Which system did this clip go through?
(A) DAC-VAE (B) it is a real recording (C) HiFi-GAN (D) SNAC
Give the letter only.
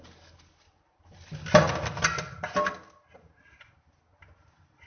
B